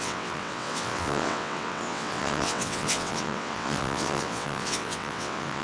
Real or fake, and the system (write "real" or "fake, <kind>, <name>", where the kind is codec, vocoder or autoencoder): fake, vocoder, WaveNeXt